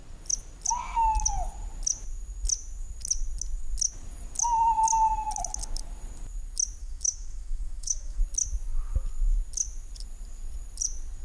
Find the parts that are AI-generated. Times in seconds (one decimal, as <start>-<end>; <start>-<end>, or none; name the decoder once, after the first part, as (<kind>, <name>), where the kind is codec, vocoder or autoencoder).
6.8-8.2 (autoencoder, DAC-VAE)